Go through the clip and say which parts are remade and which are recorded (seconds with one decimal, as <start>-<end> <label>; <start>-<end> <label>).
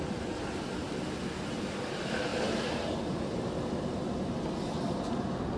0.0-5.6 recorded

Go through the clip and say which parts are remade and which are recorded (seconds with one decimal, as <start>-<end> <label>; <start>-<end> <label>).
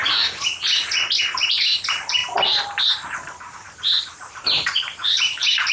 0.0-1.2 recorded; 1.2-5.7 remade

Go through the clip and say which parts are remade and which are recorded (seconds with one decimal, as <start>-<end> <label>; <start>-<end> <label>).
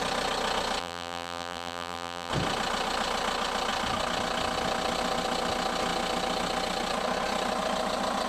0.0-0.8 recorded; 0.8-2.3 remade; 2.3-8.3 recorded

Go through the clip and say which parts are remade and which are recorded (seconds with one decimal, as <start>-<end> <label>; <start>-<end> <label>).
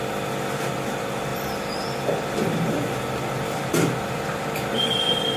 0.0-1.3 recorded; 1.3-3.7 remade; 3.7-5.4 recorded